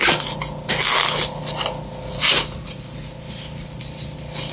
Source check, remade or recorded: recorded